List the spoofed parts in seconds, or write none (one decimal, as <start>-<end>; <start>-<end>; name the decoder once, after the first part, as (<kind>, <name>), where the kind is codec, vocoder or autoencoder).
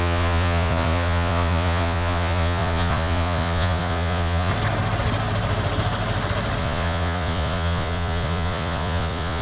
0.0-4.5 (vocoder, Vocos); 6.6-9.4